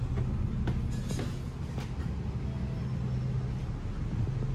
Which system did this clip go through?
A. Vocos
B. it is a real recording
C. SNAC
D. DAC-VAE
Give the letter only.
B